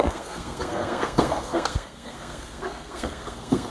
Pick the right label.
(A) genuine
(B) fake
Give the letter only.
B